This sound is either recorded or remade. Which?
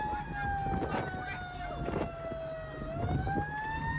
recorded